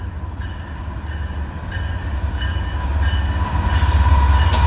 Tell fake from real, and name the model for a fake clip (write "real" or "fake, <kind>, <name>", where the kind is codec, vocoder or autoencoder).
real